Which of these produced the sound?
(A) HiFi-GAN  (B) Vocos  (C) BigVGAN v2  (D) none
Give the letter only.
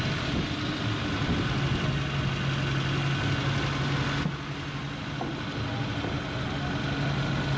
D